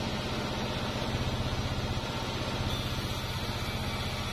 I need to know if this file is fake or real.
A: real